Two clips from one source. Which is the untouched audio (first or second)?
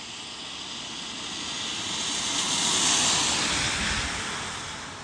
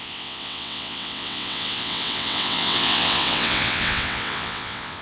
first